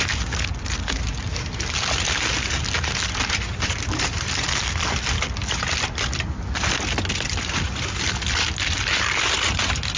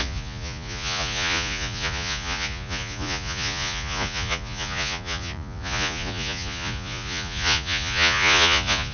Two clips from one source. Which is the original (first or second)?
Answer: first